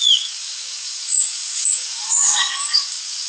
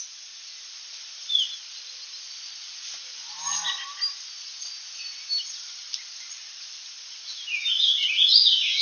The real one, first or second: second